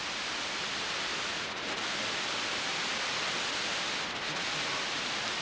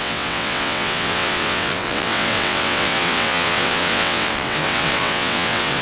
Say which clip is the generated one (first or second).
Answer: second